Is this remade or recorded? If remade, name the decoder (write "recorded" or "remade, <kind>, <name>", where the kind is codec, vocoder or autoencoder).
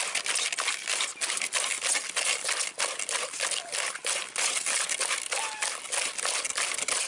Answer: recorded